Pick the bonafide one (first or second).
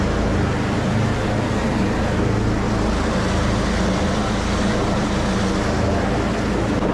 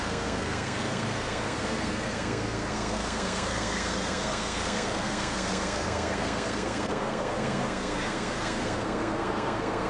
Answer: first